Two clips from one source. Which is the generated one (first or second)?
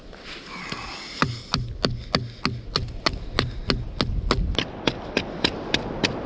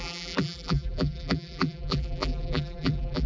second